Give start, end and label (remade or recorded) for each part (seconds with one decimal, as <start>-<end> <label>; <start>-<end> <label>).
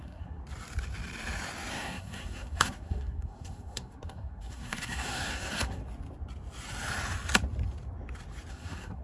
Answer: 0.0-0.4 remade; 0.4-1.7 recorded; 1.7-5.8 remade; 5.8-8.5 recorded; 8.5-9.0 remade